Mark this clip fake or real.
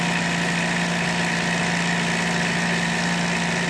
real